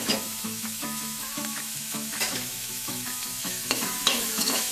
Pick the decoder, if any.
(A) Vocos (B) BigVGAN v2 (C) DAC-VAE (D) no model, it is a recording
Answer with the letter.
C